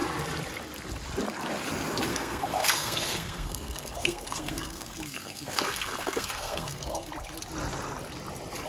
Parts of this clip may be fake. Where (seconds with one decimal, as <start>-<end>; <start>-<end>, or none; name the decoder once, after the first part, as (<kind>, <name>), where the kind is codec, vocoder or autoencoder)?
2.1-7.1 (codec, SNAC)